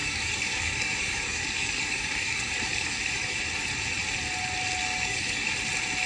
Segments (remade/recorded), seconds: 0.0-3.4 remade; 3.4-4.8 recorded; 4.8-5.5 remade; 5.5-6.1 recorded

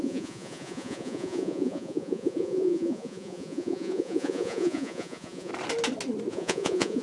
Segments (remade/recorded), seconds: 0.0-5.5 remade; 5.5-6.3 recorded; 6.3-7.0 remade

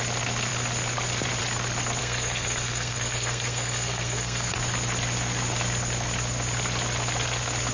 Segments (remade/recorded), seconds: 0.0-2.0 recorded; 2.0-4.5 remade; 4.5-7.7 recorded

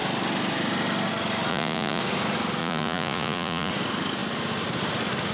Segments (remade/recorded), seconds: 0.0-1.5 recorded; 1.5-2.0 remade; 2.0-2.6 recorded; 2.6-3.7 remade; 3.7-5.3 recorded

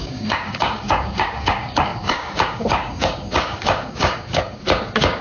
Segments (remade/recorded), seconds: 0.0-5.2 remade

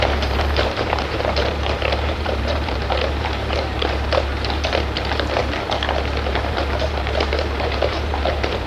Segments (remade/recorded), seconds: 0.0-5.4 remade; 5.4-6.3 recorded; 6.3-8.7 remade

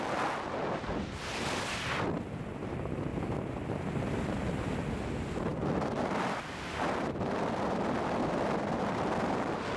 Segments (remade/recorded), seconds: 0.0-9.8 recorded